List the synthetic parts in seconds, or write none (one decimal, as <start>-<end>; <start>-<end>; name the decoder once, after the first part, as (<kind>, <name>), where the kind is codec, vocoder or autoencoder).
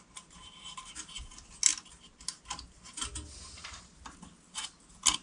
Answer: none